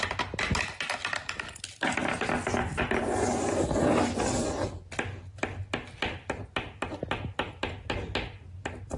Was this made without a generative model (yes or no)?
yes